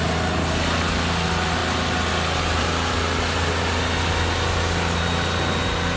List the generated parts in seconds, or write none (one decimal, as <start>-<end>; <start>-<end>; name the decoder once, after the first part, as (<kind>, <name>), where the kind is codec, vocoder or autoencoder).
none